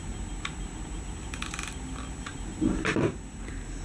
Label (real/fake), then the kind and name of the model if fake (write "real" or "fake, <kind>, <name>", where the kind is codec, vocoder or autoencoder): real